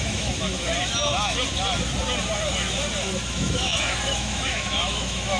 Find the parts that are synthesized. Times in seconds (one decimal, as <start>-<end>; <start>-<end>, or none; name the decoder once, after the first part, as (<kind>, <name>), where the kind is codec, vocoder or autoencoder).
0.0-0.7 (autoencoder, DAC-VAE); 3.3-5.4

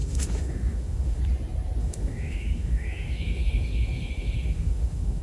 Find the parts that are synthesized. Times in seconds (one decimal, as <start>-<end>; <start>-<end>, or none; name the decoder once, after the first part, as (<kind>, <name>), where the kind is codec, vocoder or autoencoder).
0.0-1.2 (autoencoder, DAC-VAE); 1.8-5.2

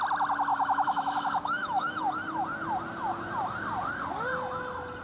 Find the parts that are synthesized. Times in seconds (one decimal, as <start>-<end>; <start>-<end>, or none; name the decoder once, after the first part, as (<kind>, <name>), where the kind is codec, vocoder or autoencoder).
0.5-2.0 (autoencoder, DAC-VAE)